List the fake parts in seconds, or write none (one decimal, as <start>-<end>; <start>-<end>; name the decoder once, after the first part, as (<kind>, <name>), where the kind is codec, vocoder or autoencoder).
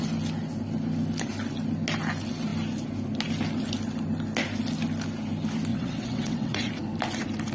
5.7-6.7 (vocoder, WaveNeXt)